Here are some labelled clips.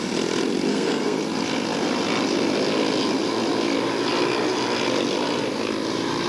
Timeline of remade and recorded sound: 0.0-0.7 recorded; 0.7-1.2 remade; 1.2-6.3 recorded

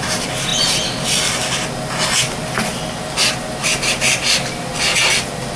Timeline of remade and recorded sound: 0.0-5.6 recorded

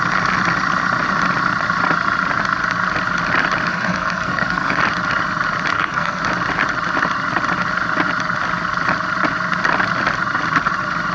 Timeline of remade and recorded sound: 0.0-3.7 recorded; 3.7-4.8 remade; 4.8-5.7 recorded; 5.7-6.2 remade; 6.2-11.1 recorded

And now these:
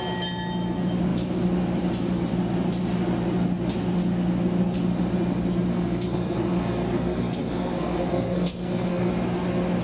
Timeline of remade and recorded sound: 0.0-5.7 recorded; 5.7-9.1 remade; 9.1-9.8 recorded

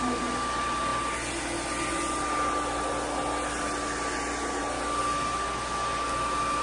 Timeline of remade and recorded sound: 0.0-6.6 recorded

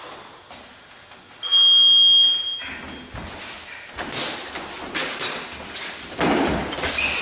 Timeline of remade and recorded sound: 0.0-7.2 recorded